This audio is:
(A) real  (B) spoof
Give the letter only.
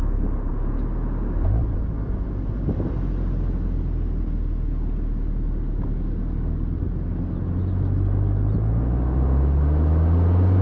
A